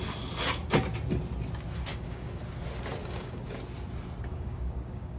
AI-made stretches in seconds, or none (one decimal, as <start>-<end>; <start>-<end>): 1.9-2.4; 3.0-3.6; 4.3-5.2